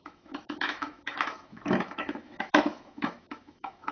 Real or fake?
fake